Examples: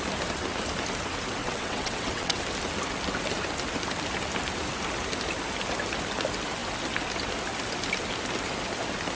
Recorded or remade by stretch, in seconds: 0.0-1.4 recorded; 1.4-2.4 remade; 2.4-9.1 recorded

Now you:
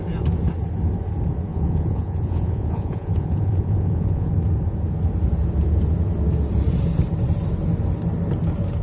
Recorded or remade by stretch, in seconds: 0.0-1.5 recorded; 1.5-4.3 remade; 4.3-8.8 recorded

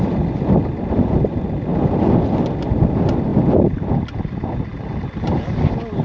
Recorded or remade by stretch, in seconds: 0.0-3.3 recorded; 3.3-4.2 remade; 4.2-6.0 recorded

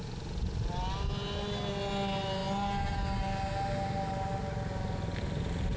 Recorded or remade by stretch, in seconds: 0.0-5.8 recorded